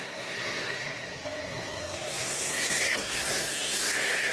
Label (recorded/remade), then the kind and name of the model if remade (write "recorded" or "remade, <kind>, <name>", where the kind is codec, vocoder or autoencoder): remade, codec, SNAC